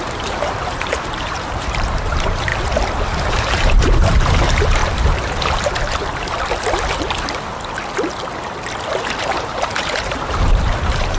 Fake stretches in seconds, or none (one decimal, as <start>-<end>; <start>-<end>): 0.0-2.5; 3.3-4.8; 9.2-11.2